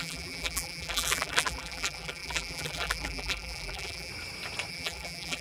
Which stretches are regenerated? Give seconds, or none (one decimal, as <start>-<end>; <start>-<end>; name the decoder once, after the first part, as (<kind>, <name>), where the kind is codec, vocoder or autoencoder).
0.0-4.1 (vocoder, BigVGAN v2); 4.7-5.4